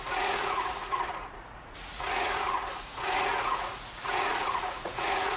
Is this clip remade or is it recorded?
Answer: remade